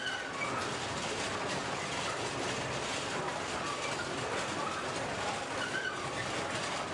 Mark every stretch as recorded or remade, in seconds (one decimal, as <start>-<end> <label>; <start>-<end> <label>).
0.0-6.9 recorded